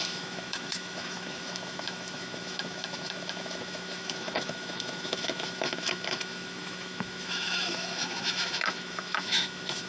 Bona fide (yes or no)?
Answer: no